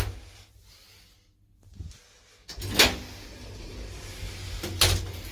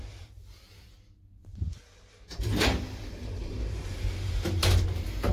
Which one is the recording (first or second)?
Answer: first